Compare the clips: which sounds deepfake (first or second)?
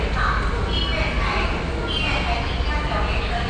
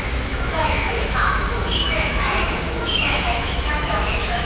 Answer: second